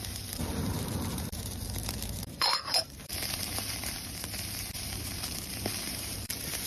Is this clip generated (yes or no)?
yes